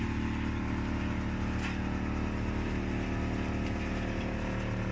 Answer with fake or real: real